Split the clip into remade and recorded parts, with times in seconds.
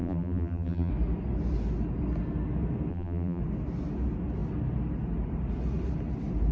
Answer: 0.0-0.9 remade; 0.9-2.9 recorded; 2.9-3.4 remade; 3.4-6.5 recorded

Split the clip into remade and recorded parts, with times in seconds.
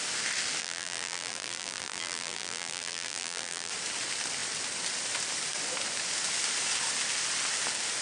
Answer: 0.0-0.6 recorded; 0.6-3.7 remade; 3.7-8.0 recorded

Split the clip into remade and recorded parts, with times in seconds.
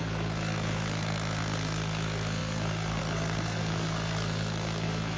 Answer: 0.0-5.2 remade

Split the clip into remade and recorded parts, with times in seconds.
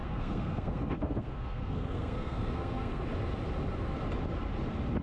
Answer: 0.0-3.0 remade; 3.0-5.0 recorded